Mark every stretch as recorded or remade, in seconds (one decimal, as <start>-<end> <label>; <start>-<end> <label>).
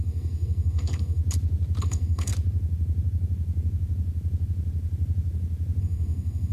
0.0-1.2 remade; 1.2-1.8 recorded; 1.8-2.3 remade; 2.3-5.8 recorded; 5.8-6.5 remade